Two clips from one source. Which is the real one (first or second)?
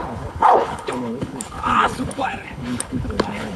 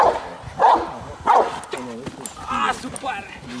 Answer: second